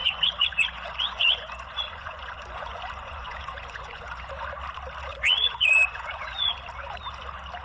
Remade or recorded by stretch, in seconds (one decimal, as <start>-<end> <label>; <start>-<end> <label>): 0.0-4.3 remade; 4.3-5.1 recorded; 5.1-6.5 remade; 6.5-7.6 recorded